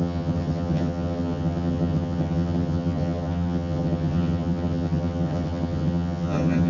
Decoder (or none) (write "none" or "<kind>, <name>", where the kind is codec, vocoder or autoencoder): vocoder, HiFi-GAN